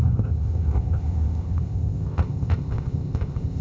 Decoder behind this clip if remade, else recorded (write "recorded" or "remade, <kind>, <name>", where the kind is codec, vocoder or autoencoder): remade, codec, ZipCodec